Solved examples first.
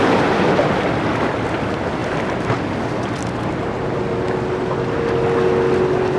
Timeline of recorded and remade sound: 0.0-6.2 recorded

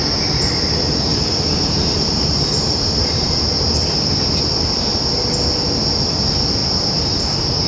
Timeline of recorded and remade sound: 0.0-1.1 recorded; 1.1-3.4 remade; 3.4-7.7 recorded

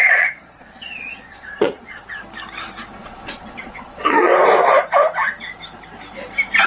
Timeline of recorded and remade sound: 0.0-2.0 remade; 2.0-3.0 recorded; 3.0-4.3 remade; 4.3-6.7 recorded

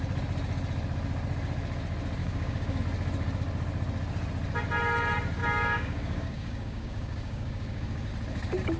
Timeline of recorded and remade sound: 0.0-2.2 recorded; 2.2-2.8 remade; 2.8-5.4 recorded; 5.4-8.1 remade; 8.1-8.8 recorded